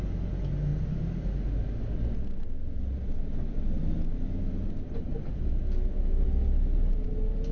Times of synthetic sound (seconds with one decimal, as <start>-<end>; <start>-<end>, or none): none